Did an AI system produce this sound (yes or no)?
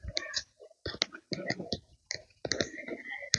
no